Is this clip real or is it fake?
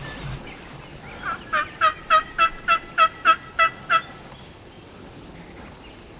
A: real